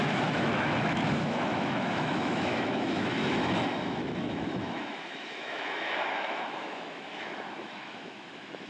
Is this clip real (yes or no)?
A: no